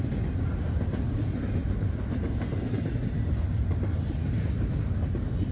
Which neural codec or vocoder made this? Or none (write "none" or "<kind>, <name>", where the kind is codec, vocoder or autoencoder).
none